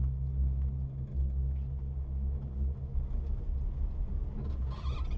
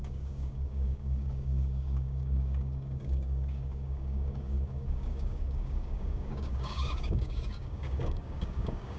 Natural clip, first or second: first